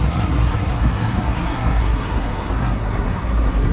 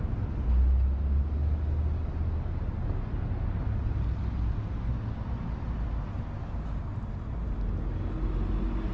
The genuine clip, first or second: second